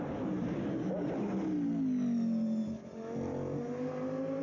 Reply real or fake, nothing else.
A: real